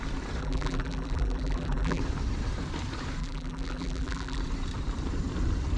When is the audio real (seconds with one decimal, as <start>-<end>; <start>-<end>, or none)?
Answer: 0.0-0.4; 2.0-3.2; 4.4-5.8